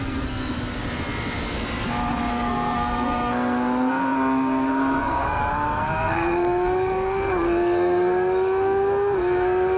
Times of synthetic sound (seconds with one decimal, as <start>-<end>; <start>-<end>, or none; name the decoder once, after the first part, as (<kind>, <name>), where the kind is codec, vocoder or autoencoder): 0.0-0.4 (codec, SNAC); 2.3-9.8